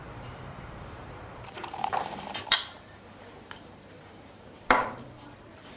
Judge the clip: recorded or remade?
remade